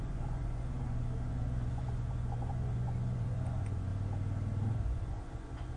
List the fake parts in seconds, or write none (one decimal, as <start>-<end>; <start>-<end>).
0.0-3.9; 4.9-5.8